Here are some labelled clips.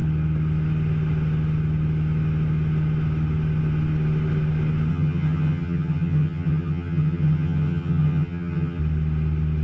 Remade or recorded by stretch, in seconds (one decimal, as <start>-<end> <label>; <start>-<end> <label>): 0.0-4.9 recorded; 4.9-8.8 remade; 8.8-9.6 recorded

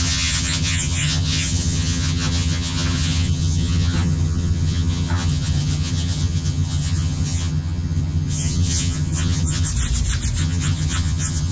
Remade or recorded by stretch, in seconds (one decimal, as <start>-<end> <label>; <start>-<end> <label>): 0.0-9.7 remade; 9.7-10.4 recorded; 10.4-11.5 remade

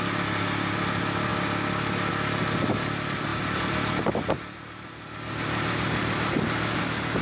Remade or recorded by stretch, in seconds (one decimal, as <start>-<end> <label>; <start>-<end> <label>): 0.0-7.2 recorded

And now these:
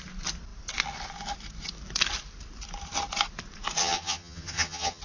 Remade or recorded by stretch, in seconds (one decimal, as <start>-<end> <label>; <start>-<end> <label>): 0.0-3.8 recorded; 3.8-5.0 remade

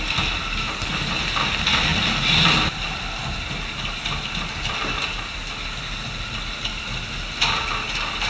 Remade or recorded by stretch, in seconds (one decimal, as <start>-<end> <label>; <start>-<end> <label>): 0.0-8.3 recorded

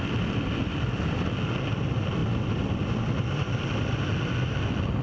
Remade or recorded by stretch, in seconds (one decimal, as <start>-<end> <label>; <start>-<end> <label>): 0.0-5.0 recorded

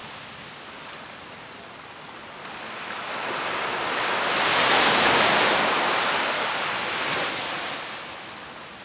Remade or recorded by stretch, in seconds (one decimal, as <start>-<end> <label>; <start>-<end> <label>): 0.0-8.8 recorded